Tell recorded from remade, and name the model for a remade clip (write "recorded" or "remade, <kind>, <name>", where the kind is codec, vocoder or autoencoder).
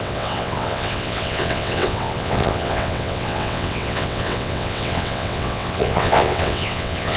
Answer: remade, vocoder, WaveNeXt